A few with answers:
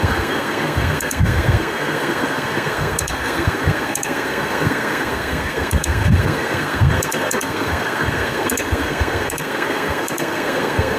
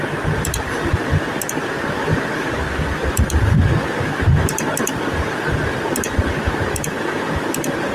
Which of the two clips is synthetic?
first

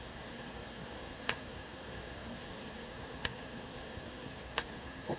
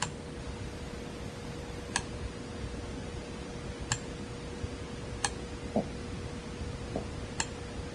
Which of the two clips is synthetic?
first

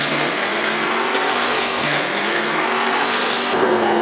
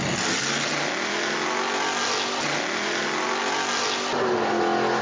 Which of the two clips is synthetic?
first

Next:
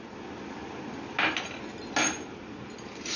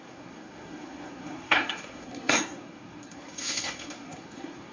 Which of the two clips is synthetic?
second